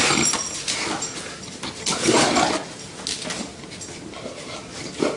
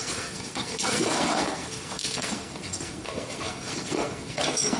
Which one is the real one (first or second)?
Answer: first